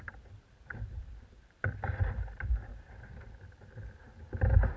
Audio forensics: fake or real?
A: fake